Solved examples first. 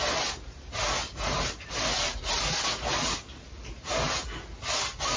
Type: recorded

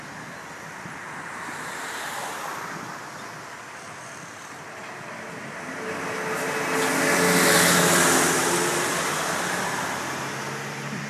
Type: recorded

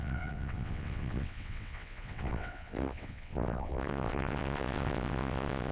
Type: remade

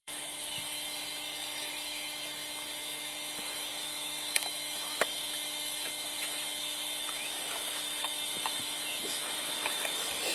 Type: remade